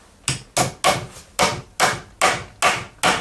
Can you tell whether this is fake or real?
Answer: real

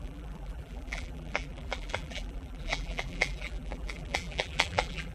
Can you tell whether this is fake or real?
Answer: fake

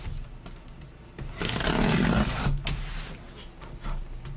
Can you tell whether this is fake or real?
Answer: real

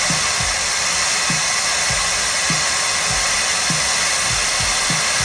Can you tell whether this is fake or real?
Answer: real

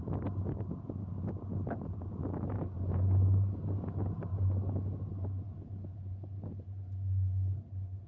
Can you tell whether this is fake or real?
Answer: real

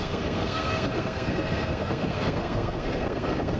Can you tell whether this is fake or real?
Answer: fake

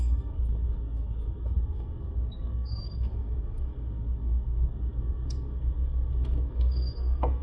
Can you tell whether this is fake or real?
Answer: fake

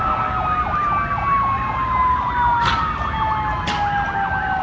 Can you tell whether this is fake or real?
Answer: real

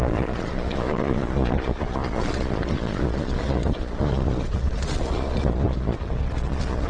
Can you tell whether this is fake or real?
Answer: fake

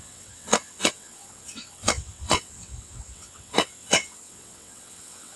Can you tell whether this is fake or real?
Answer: fake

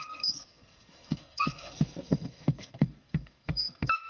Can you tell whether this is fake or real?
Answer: fake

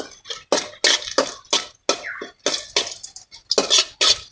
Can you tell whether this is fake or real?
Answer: real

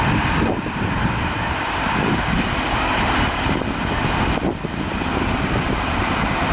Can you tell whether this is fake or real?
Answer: real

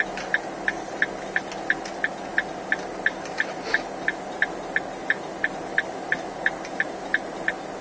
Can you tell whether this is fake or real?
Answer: real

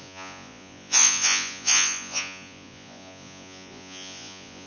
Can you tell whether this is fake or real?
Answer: fake